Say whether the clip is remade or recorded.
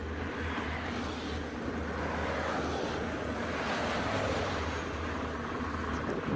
recorded